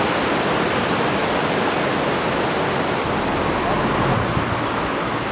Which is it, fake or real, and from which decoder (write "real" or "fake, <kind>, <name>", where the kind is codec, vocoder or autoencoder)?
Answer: real